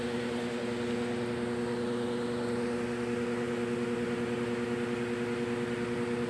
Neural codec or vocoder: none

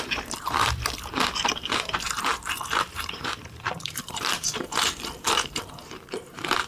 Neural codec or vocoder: vocoder, BigVGAN v2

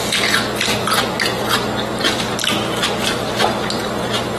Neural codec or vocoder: none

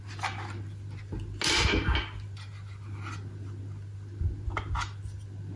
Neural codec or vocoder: none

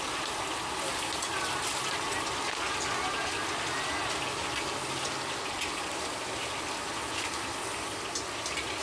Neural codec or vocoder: none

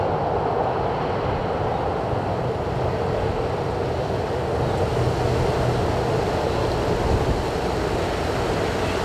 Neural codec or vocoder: none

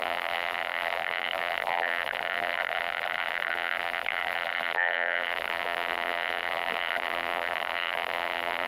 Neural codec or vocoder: vocoder, BigVGAN v2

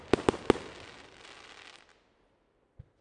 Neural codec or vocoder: none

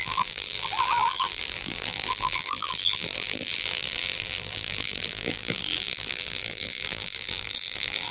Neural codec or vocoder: vocoder, BigVGAN v2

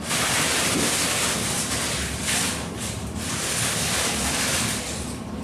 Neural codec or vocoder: vocoder, BigVGAN v2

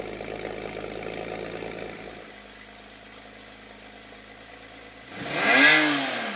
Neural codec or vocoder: none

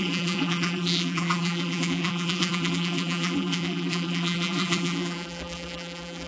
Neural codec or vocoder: vocoder, BigVGAN v2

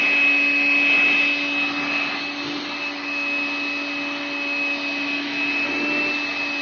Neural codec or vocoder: none